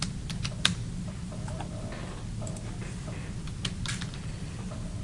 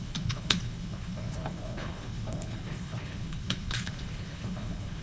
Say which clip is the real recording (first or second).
first